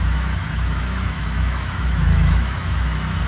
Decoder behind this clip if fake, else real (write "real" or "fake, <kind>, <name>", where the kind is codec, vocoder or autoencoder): fake, autoencoder, DAC-VAE